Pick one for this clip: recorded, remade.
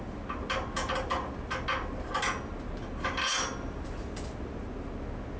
recorded